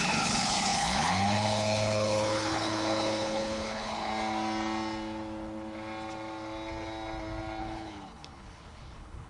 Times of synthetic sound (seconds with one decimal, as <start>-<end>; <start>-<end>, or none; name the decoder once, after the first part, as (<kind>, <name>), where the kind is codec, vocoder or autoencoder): 0.0-4.1 (codec, HILCodec); 7.6-9.3

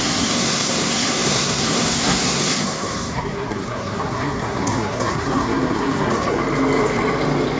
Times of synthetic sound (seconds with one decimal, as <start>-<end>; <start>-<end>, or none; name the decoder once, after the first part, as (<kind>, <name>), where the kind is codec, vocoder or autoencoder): 0.0-6.4 (codec, SNAC)

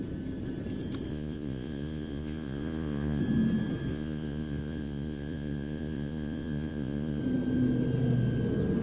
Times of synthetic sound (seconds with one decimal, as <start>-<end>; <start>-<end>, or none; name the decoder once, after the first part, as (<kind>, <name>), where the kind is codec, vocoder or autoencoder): 1.1-3.2 (vocoder, Vocos); 3.9-7.2

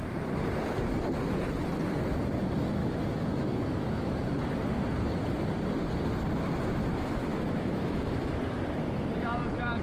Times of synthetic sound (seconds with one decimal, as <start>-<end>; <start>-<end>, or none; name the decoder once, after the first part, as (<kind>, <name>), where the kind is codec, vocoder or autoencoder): 2.8-4.1 (autoencoder, DAC-VAE); 7.3-8.0

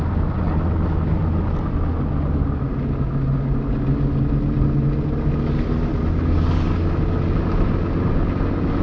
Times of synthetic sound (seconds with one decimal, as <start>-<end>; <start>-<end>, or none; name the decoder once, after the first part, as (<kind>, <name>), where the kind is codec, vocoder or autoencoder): none

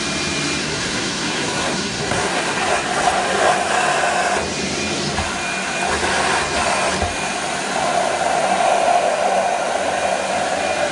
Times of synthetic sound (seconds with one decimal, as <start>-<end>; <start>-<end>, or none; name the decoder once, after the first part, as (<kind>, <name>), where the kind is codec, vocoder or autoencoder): 0.6-2.6 (codec, SNAC)

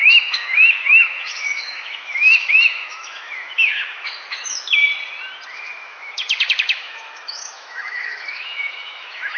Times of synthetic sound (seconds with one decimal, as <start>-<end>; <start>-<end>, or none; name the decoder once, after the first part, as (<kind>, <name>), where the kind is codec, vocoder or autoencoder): 0.0-4.8 (autoencoder, DAC-VAE); 5.5-9.4

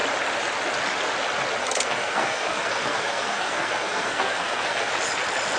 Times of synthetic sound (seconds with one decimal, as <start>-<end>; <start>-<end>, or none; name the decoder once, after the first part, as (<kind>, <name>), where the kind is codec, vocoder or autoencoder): 1.6-4.9 (codec, SNAC)